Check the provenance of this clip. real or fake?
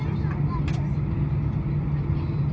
real